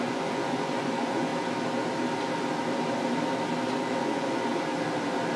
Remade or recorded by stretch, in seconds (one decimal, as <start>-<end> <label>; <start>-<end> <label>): 0.0-1.3 remade; 1.3-4.0 recorded; 4.0-4.5 remade; 4.5-5.4 recorded